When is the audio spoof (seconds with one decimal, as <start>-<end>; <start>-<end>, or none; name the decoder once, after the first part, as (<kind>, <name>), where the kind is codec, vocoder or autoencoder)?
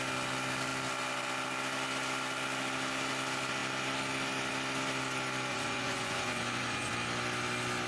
5.5-6.9 (vocoder, Vocos)